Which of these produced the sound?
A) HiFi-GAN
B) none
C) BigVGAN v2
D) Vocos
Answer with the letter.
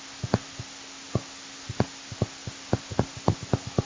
B